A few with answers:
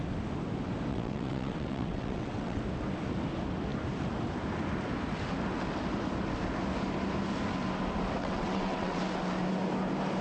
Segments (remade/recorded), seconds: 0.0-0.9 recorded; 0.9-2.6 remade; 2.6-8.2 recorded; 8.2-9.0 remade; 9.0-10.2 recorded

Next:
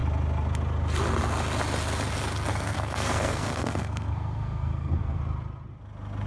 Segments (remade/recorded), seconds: 0.0-2.5 recorded; 2.5-5.2 remade; 5.2-6.3 recorded

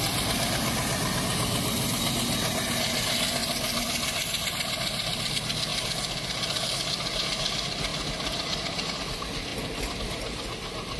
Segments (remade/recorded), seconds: 0.0-3.4 recorded; 3.4-5.3 remade; 5.3-5.7 recorded; 5.7-6.7 remade; 6.7-7.9 recorded; 7.9-8.9 remade; 8.9-11.0 recorded

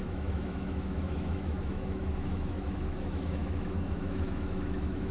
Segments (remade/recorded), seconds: 0.0-5.1 remade

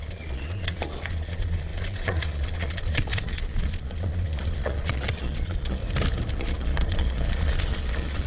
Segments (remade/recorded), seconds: 0.0-5.8 remade; 5.8-6.3 recorded; 6.3-8.3 remade